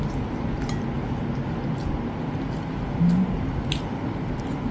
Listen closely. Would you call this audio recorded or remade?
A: recorded